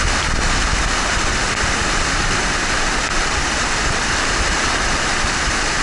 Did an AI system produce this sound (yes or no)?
no